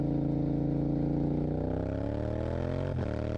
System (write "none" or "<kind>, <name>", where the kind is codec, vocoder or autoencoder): none